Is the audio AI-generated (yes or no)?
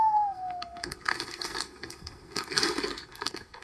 yes